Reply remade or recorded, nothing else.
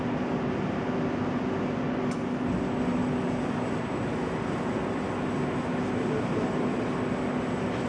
recorded